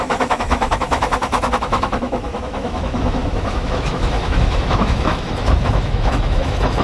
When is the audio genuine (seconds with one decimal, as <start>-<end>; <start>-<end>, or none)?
none

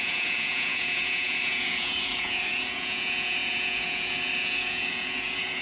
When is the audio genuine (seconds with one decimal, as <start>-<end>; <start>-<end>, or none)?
none

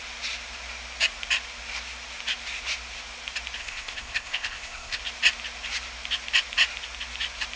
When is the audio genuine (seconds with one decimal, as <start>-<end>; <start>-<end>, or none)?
0.0-3.6; 5.0-7.6

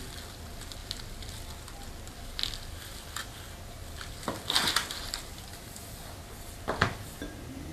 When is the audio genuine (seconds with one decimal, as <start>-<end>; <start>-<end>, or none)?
0.0-7.7

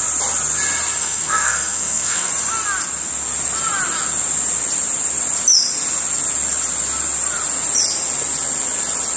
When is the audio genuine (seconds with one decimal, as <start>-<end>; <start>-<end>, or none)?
0.0-1.0; 2.3-9.2

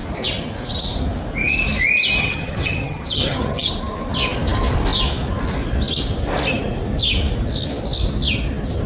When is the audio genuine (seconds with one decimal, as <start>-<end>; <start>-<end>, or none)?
0.0-2.2; 3.7-8.9

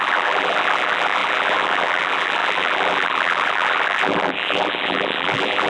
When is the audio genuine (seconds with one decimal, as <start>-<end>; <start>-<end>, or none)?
none

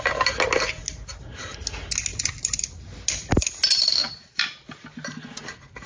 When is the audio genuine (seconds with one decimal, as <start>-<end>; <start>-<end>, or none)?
0.0-2.1; 2.6-3.8; 4.8-5.9